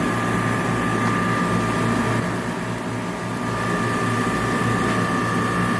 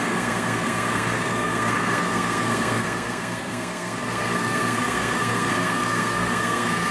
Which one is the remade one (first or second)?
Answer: second